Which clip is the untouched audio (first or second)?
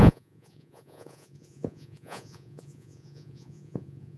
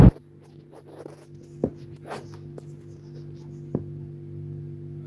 second